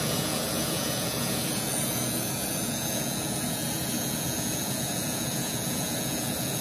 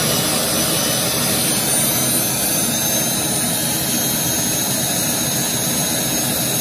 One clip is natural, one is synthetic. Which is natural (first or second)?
second